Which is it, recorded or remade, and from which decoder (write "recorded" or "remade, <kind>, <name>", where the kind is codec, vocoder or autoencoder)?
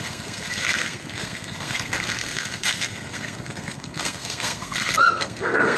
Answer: remade, codec, SNAC